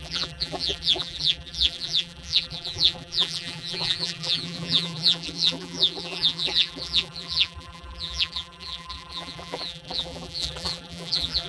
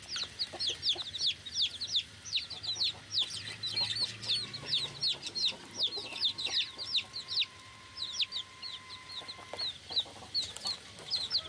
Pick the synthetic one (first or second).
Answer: first